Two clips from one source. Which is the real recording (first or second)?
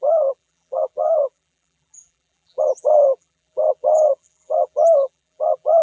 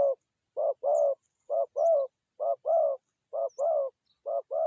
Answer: second